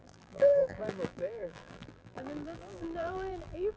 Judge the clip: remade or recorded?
remade